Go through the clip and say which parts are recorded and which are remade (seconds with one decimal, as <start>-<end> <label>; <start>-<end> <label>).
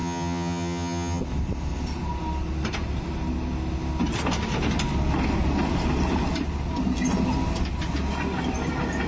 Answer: 0.0-1.2 remade; 1.2-9.1 recorded